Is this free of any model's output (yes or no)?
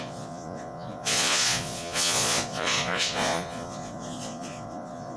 no